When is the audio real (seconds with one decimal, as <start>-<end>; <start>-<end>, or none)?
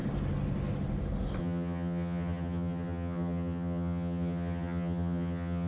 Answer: 0.0-1.4